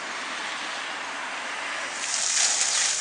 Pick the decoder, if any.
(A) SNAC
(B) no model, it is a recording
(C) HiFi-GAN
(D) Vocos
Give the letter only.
B